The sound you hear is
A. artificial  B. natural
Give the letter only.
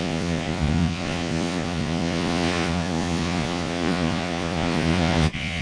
A